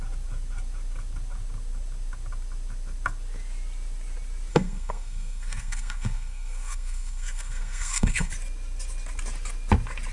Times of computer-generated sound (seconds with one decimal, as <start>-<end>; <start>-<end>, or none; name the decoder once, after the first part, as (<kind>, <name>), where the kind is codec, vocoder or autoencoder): 4.5-8.3 (codec, SNAC)